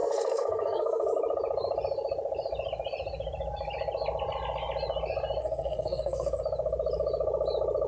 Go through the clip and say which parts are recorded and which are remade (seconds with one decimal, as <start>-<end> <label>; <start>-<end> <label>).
0.0-1.1 remade; 1.1-5.4 recorded; 5.4-6.4 remade; 6.4-7.9 recorded